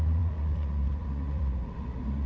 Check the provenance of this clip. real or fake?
fake